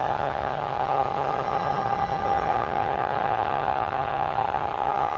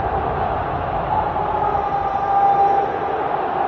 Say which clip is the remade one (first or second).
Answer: first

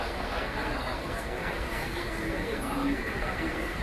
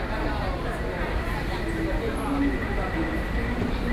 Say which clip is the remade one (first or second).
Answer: first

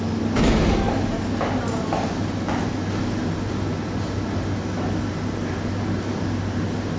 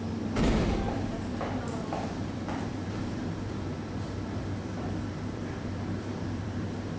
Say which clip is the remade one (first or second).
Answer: second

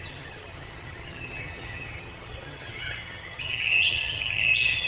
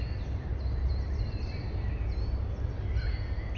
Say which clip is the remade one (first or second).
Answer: first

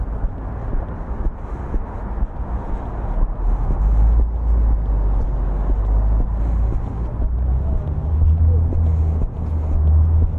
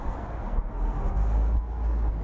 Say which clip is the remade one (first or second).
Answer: second